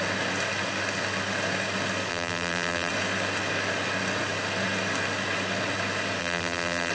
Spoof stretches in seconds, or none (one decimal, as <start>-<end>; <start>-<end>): 2.1-2.9; 6.2-6.9